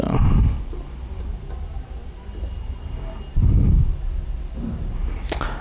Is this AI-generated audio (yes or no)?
no